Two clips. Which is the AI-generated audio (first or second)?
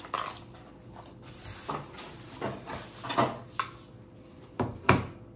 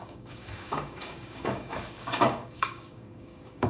second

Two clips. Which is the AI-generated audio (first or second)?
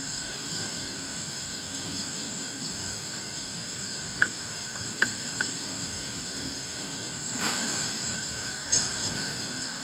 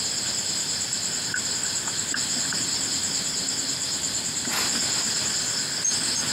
first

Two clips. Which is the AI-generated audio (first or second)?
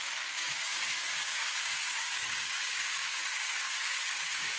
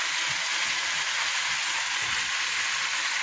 first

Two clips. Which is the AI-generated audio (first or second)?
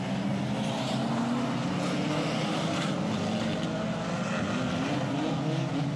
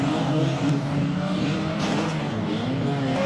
second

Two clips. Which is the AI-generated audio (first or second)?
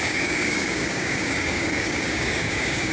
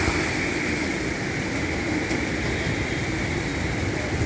first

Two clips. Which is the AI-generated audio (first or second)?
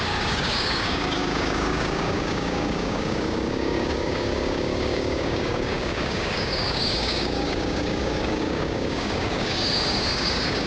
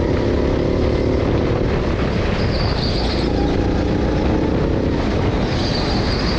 first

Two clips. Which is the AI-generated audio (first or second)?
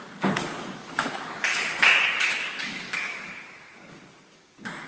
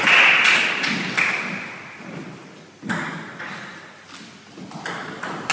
first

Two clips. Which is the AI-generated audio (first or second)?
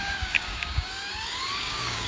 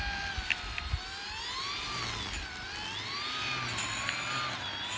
first